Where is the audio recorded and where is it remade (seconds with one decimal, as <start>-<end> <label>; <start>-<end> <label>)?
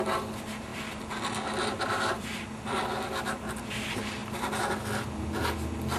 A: 0.0-6.0 recorded